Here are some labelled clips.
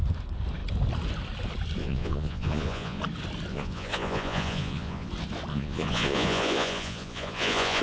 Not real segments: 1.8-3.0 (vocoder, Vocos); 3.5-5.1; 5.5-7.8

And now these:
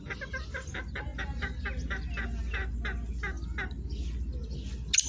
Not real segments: none